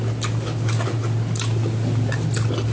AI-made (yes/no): no